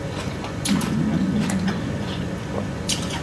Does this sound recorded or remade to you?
remade